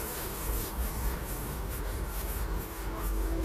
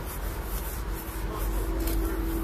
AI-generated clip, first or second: first